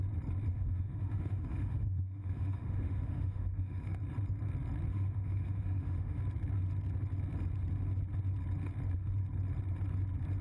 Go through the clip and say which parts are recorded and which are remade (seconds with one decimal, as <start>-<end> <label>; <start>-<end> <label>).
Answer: 0.0-0.5 recorded; 0.5-4.0 remade; 4.0-4.9 recorded; 4.9-6.2 remade; 6.2-10.4 recorded